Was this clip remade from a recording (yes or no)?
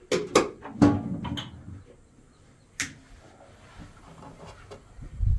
no